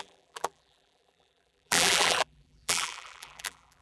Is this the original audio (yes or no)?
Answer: no